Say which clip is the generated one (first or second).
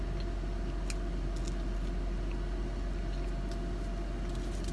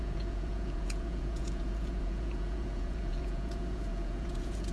second